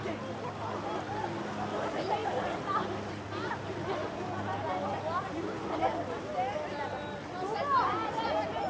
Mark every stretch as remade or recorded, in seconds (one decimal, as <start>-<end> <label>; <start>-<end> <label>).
0.0-8.7 recorded